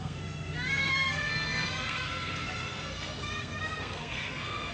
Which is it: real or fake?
fake